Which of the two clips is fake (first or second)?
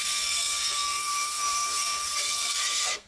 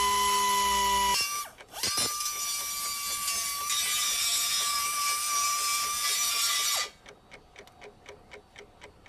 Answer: first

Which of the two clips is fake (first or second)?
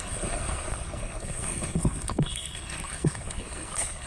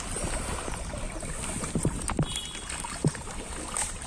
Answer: first